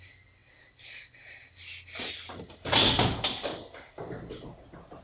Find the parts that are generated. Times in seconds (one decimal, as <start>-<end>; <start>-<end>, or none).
none